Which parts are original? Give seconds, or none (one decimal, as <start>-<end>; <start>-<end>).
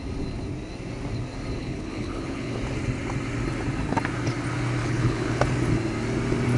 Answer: 0.0-1.6; 2.6-4.8; 5.4-6.6